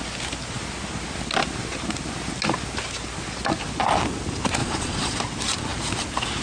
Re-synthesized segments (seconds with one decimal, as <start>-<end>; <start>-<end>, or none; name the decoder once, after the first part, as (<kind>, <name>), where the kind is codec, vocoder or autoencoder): 4.6-5.2 (vocoder, Vocos)